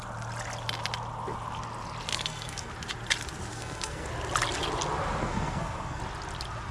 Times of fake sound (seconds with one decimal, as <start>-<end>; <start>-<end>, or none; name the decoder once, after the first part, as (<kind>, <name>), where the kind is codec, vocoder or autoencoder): 2.1-2.7 (codec, SNAC); 3.5-4.1; 5.2-6.0